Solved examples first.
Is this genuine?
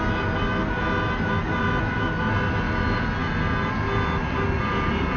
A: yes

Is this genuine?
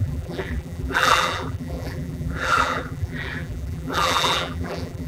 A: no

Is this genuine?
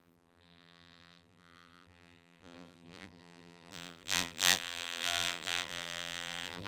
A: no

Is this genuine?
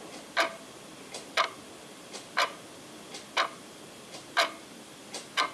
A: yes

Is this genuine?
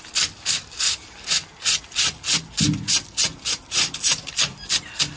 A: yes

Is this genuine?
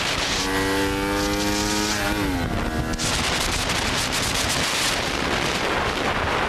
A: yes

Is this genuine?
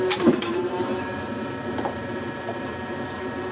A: no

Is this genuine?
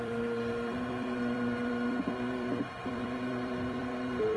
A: no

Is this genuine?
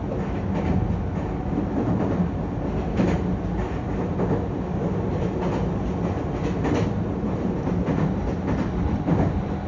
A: yes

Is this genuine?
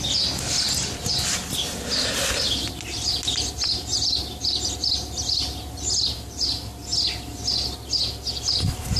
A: yes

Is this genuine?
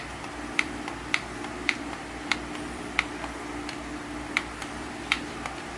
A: no